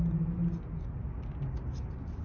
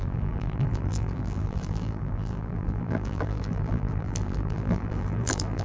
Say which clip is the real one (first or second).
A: first